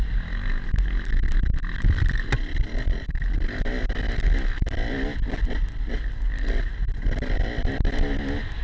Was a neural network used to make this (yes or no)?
no